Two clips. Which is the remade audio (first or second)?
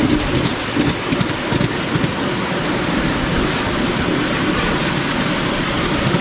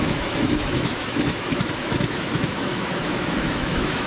second